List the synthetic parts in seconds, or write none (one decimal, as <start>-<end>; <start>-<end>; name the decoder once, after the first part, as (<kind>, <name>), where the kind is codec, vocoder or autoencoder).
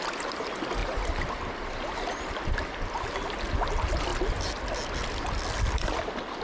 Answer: 0.8-2.4 (vocoder, BigVGAN v2)